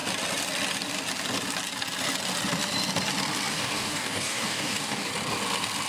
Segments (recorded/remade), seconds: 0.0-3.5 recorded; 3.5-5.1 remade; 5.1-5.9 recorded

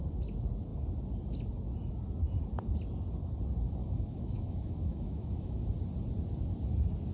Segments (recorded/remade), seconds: 0.0-3.8 recorded; 3.8-5.6 remade; 5.6-7.1 recorded

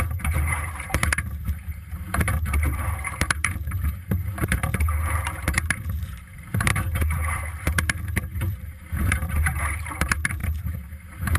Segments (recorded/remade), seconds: 0.0-11.4 remade

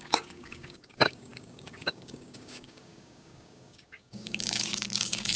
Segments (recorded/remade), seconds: 0.0-5.4 remade

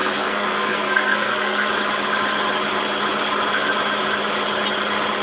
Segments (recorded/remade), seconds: 0.0-1.7 remade; 1.7-5.2 recorded

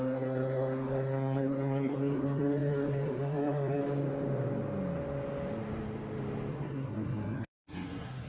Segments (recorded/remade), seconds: 0.0-3.8 remade; 3.8-6.5 recorded; 6.5-8.3 remade